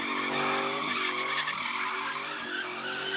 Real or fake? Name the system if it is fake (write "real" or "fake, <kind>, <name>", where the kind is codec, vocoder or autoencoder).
real